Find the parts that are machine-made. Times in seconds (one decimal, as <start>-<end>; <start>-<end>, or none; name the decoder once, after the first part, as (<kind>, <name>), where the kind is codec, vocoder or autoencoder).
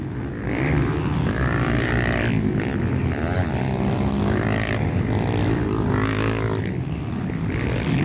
none